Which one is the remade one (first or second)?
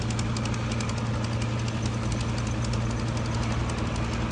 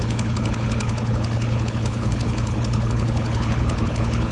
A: second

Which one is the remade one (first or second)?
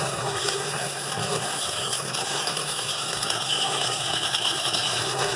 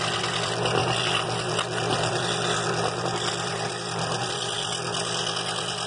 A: first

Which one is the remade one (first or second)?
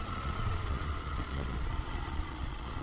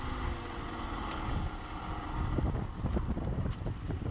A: first